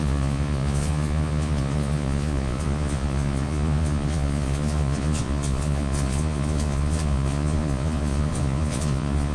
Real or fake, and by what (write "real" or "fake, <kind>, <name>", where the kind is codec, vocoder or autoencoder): fake, vocoder, Vocos